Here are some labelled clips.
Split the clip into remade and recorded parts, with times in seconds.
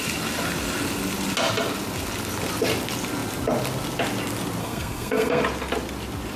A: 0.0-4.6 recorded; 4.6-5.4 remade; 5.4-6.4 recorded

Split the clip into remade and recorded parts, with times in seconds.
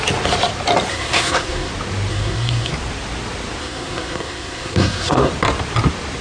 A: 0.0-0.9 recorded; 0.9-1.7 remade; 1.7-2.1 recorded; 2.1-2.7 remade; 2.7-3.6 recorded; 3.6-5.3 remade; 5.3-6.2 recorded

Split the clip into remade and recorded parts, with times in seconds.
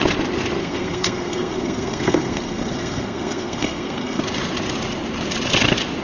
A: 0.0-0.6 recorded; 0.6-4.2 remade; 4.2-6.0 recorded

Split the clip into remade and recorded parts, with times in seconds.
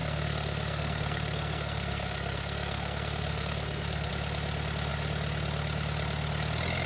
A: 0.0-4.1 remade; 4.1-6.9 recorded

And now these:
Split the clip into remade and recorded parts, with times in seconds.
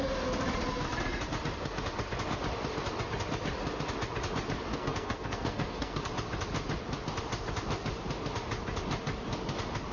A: 0.0-4.7 recorded; 4.7-6.1 remade; 6.1-9.9 recorded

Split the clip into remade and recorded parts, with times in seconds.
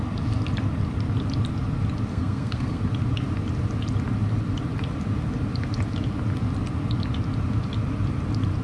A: 0.0-2.1 recorded; 2.1-2.8 remade; 2.8-8.6 recorded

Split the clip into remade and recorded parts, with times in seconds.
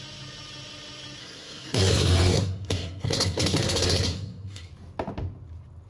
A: 0.0-1.2 recorded; 1.2-4.7 remade; 4.7-5.9 recorded